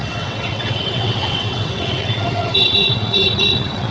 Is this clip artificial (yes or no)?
yes